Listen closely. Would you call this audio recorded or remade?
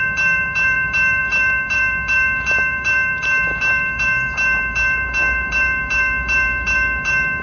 remade